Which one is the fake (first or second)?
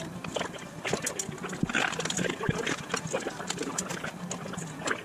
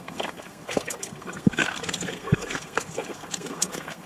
second